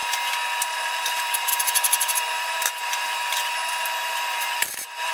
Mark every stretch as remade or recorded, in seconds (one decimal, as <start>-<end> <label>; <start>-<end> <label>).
0.0-0.6 recorded; 0.6-5.1 remade

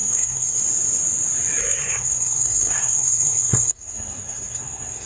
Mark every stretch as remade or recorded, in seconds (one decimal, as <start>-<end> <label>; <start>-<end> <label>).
0.0-0.6 remade; 0.6-1.6 recorded; 1.6-5.1 remade

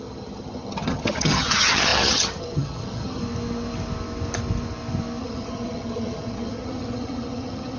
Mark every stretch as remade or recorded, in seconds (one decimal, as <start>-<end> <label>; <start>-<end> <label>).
0.0-3.2 remade; 3.2-5.2 recorded; 5.2-7.8 remade

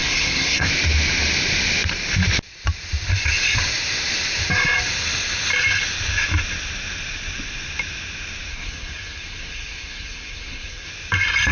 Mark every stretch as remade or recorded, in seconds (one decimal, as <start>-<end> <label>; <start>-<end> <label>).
0.0-0.7 remade; 0.7-8.5 recorded; 8.5-10.9 remade; 10.9-11.5 recorded

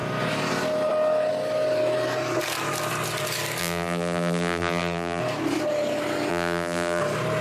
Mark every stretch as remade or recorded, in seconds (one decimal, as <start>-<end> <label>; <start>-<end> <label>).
0.0-3.6 recorded; 3.6-5.2 remade; 5.2-6.3 recorded; 6.3-7.0 remade; 7.0-7.4 recorded

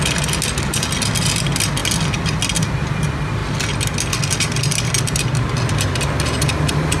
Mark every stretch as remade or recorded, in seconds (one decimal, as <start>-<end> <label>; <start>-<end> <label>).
0.0-7.0 recorded

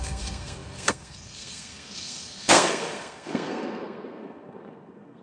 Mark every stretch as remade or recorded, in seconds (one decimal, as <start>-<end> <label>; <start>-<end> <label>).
0.0-5.2 remade